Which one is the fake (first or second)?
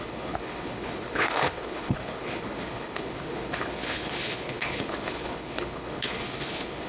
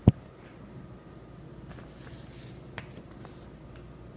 first